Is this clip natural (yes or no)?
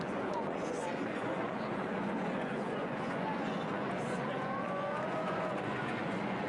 no